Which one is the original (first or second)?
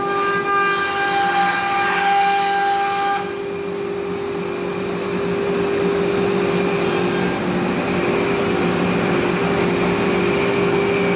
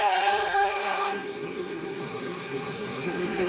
first